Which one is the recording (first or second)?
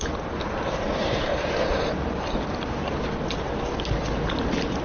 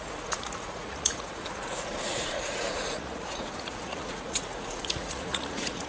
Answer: first